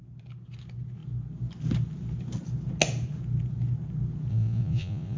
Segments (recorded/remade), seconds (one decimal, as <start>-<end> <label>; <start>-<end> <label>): 0.0-4.3 recorded; 4.3-5.2 remade